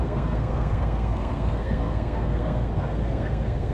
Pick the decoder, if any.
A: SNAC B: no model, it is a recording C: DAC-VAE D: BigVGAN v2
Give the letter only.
A